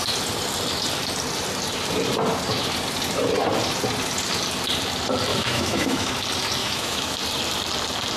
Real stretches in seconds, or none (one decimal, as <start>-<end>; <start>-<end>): 0.0-5.3; 6.1-6.6; 7.2-8.2